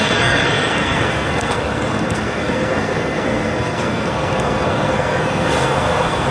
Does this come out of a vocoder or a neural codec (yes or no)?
yes